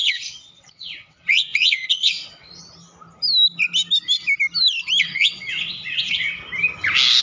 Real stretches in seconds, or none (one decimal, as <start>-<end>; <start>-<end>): 2.6-5.0; 6.4-7.2